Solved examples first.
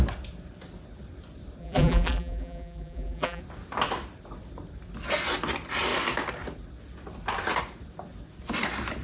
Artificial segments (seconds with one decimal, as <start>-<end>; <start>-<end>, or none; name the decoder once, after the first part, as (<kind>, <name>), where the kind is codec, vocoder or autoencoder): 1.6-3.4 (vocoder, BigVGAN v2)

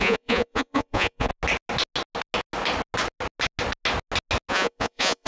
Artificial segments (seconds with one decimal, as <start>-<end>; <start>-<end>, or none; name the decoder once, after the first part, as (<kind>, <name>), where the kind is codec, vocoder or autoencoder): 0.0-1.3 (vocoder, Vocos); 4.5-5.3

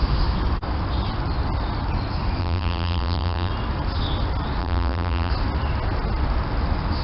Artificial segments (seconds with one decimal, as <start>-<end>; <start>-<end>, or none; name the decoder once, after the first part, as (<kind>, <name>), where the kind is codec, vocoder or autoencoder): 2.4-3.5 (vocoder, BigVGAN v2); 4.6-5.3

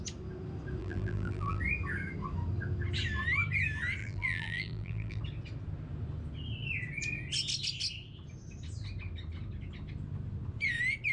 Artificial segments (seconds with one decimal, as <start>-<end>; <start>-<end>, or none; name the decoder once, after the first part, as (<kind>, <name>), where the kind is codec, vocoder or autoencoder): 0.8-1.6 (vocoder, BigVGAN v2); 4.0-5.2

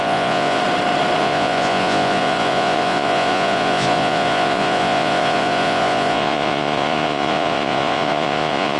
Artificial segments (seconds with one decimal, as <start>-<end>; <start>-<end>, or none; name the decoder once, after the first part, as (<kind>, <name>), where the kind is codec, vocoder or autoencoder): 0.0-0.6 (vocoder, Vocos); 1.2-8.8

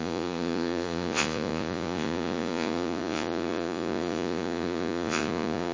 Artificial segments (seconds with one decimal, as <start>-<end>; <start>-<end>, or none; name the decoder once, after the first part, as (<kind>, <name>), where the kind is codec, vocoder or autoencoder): 0.0-5.7 (vocoder, Vocos)

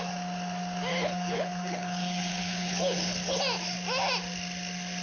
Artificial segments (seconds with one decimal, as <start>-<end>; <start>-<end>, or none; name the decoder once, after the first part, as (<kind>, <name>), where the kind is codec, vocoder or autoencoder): 0.9-3.4 (codec, HILCodec)